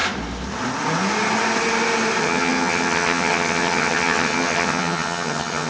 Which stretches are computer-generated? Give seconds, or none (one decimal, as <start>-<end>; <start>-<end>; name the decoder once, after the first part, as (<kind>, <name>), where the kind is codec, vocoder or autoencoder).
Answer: 2.2-5.7 (vocoder, HiFi-GAN)